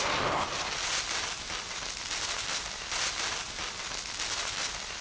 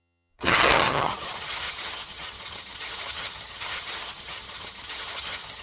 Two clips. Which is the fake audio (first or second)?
second